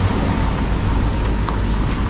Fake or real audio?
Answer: real